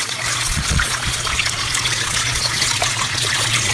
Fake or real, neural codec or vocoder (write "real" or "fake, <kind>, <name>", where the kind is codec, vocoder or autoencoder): fake, vocoder, Vocos